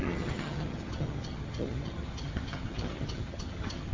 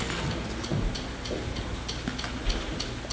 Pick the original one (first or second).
second